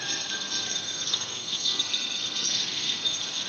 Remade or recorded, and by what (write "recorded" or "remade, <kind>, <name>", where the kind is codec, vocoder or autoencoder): remade, codec, SNAC